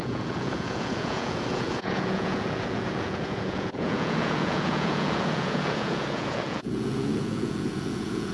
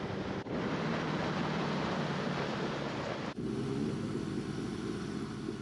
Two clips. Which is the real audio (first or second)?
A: second